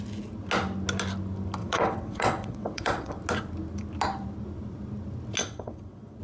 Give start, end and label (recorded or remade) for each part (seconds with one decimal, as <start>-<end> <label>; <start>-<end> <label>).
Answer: 0.0-1.6 recorded; 1.6-3.1 remade; 3.1-5.4 recorded; 5.4-6.2 remade

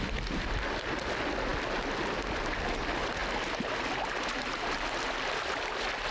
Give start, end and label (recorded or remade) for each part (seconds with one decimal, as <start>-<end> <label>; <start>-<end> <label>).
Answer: 0.0-6.1 recorded

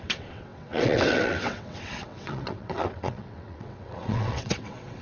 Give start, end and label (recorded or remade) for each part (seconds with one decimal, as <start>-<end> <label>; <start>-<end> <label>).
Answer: 0.0-5.0 remade